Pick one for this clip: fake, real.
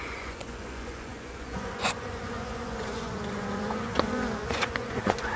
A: fake